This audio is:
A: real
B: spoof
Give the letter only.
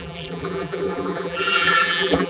B